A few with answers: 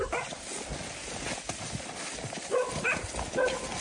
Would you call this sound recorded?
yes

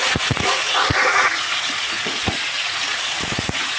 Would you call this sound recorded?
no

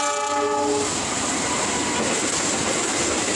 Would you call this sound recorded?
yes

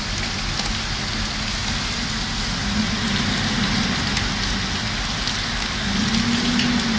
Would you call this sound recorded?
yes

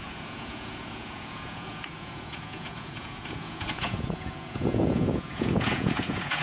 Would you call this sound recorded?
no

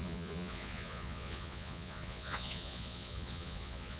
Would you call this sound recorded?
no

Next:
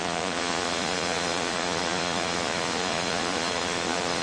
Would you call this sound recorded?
no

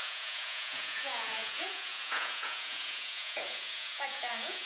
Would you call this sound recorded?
no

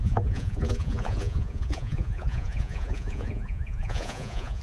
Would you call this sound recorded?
no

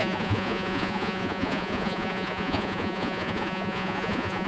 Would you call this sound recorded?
no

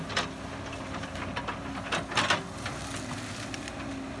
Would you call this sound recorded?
yes